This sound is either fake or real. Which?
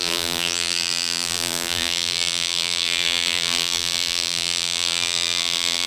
fake